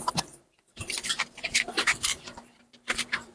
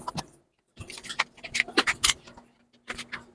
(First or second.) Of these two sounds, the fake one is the first